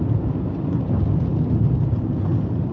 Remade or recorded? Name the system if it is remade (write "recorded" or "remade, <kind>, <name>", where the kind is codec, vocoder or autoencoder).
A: recorded